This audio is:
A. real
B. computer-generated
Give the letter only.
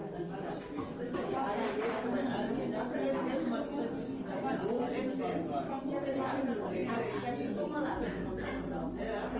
A